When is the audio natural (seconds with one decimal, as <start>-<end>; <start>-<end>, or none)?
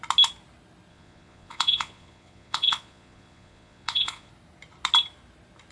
0.0-0.9; 4.3-5.7